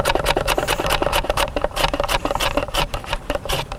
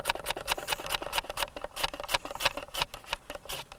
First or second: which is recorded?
second